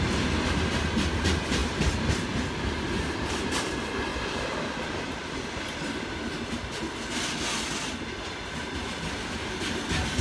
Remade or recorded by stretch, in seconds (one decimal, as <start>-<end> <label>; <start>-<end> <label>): 0.0-1.6 recorded; 1.6-2.2 remade; 2.2-4.1 recorded; 4.1-5.4 remade; 5.4-10.2 recorded